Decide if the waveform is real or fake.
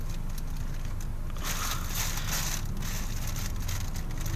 real